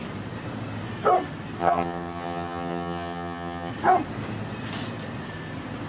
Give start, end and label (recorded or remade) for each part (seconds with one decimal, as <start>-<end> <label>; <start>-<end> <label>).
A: 0.0-1.6 recorded; 1.6-3.7 remade; 3.7-5.9 recorded